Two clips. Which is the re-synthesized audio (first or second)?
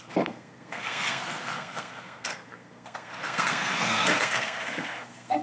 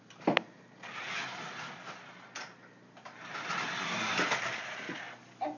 first